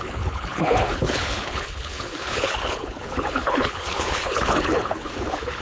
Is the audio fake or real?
fake